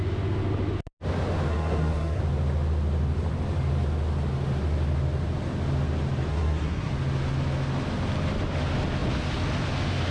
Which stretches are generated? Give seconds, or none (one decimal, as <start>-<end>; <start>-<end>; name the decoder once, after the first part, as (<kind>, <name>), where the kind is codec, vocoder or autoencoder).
1.5-2.2 (codec, SNAC); 6.3-6.9